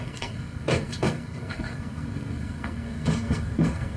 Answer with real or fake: fake